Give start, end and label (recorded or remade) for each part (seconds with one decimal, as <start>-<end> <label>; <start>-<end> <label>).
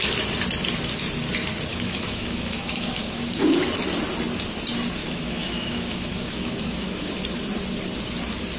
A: 0.0-1.7 recorded; 1.7-3.4 remade; 3.4-5.0 recorded; 5.0-7.1 remade; 7.1-8.6 recorded